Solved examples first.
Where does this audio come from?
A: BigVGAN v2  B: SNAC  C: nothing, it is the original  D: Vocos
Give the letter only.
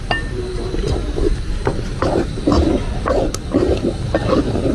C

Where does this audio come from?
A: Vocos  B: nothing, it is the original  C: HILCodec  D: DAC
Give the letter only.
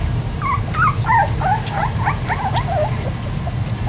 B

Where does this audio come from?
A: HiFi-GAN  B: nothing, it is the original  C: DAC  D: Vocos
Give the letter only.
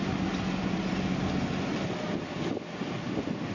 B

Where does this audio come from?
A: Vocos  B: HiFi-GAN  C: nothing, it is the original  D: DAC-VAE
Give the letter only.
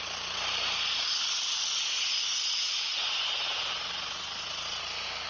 C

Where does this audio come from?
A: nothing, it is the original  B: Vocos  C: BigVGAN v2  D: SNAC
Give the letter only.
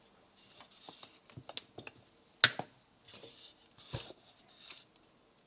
A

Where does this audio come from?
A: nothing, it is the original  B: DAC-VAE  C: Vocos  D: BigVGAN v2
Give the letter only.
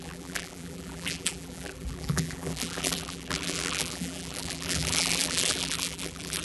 D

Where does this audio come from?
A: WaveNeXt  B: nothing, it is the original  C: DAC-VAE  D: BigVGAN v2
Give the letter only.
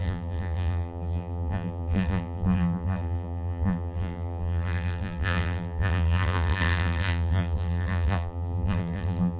D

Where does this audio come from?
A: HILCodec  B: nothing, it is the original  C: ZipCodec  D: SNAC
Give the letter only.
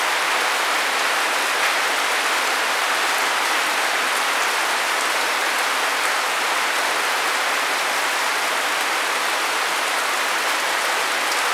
B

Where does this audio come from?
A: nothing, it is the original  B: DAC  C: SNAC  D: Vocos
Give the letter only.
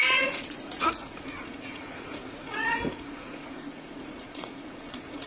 D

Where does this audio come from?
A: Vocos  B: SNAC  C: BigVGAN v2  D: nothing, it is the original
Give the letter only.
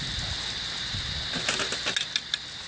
D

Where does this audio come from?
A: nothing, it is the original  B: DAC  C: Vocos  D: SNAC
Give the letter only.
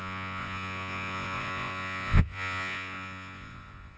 C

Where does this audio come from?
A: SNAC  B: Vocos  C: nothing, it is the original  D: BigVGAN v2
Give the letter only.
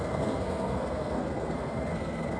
A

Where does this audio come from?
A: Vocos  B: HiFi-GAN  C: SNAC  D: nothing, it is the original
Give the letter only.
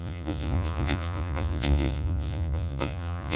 A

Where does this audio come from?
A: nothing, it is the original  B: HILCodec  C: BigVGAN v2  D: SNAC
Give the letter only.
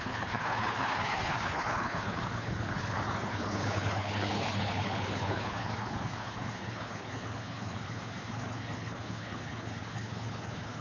B